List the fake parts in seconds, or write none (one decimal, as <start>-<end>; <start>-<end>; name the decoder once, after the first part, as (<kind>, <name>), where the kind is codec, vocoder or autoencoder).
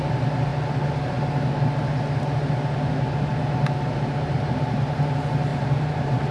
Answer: 3.3-5.1 (vocoder, BigVGAN v2); 5.5-6.3